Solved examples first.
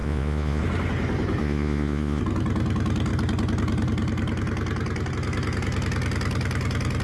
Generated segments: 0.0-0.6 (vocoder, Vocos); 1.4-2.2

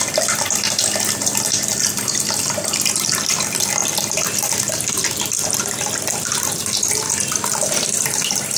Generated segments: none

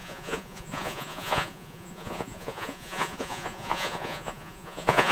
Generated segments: 0.0-5.1 (vocoder, Vocos)

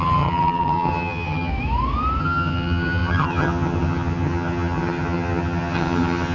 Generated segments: 0.0-1.5 (vocoder, HiFi-GAN); 2.2-6.3

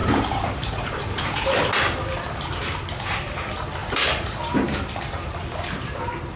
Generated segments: 0.0-1.7 (vocoder, BigVGAN v2); 3.8-6.0

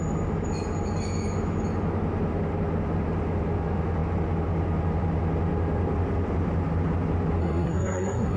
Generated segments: 7.4-8.4 (codec, SNAC)

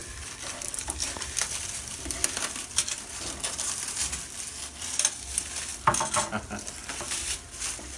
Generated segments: 0.0-4.1 (vocoder, BigVGAN v2); 6.8-8.0